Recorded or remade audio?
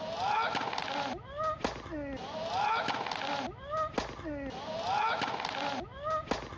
recorded